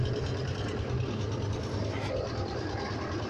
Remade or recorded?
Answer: recorded